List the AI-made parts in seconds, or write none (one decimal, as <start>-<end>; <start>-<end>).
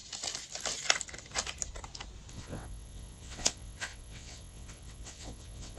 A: 2.3-5.8